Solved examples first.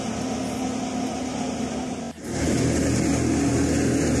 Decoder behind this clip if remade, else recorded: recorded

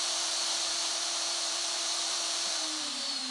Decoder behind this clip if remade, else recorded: remade, vocoder, BigVGAN v2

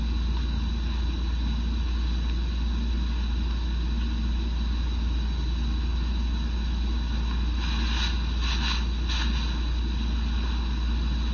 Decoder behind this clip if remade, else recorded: recorded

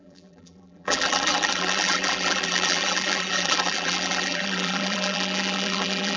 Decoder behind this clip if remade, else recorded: remade, vocoder, BigVGAN v2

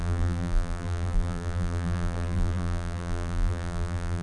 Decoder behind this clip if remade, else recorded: remade, vocoder, BigVGAN v2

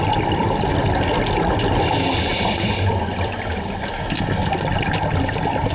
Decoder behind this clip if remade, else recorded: recorded